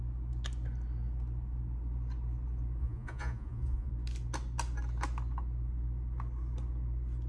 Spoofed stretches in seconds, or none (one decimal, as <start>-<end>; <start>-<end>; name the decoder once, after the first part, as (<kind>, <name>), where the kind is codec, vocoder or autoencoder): 2.8-3.9 (vocoder, Vocos)